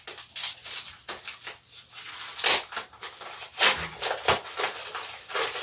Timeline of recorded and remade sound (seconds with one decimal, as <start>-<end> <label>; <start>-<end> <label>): 0.0-5.6 recorded